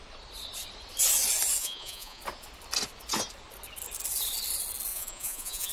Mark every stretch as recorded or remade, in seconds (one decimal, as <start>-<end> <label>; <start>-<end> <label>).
0.0-1.6 recorded; 1.6-2.2 remade; 2.2-4.9 recorded; 4.9-5.7 remade